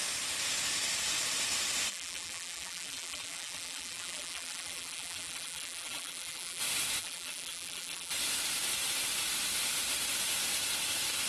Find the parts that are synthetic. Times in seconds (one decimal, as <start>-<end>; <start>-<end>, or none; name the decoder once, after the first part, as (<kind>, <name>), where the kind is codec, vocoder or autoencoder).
1.9-6.6 (vocoder, BigVGAN v2); 7.0-8.1